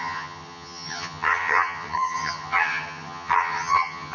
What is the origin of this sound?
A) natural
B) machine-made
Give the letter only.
B